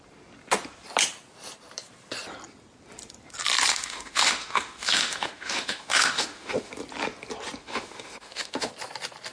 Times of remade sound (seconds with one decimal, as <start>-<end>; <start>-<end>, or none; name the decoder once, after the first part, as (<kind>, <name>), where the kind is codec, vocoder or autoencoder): 3.7-6.7 (autoencoder, DAC-VAE); 7.6-8.7